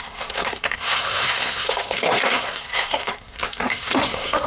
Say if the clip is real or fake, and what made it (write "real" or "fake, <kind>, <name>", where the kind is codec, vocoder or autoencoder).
fake, codec, SNAC